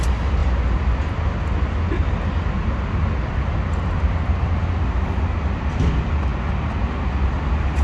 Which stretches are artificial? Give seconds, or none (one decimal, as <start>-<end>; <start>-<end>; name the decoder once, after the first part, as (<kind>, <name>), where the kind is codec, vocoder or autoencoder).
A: none